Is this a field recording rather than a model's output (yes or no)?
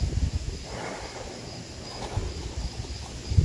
yes